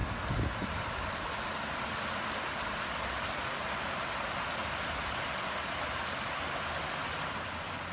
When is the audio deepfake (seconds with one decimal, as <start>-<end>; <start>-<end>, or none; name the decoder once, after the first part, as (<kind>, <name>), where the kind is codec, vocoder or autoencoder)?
none